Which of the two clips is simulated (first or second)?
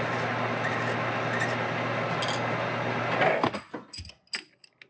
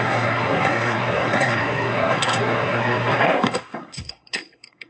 second